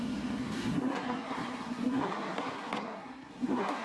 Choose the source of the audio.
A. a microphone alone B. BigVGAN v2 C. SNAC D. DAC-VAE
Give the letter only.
C